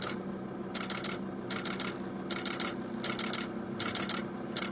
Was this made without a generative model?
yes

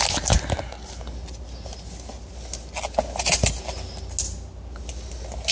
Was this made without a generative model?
yes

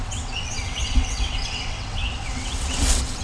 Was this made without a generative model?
no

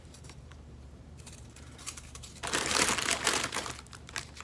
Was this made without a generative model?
no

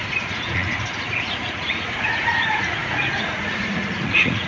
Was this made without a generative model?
no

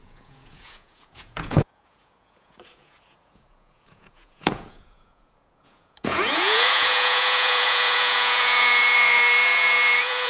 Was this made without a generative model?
no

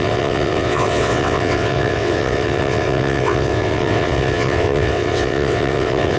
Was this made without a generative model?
no